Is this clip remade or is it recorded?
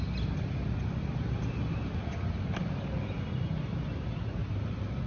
recorded